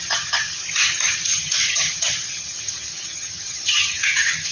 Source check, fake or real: fake